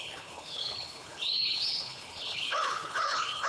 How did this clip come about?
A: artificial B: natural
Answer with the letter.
A